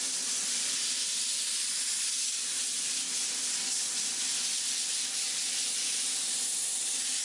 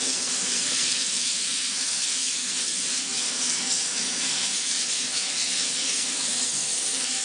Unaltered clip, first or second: first